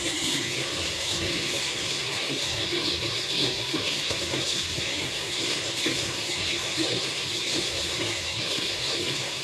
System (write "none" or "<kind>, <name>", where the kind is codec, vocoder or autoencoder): codec, SNAC